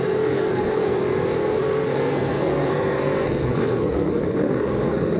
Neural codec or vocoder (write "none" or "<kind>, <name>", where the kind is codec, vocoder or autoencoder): codec, SNAC